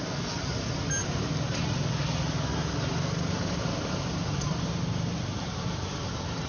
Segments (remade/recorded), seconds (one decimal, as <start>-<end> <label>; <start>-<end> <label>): 0.0-1.0 recorded; 1.0-1.6 remade; 1.6-2.6 recorded; 2.6-6.1 remade; 6.1-6.5 recorded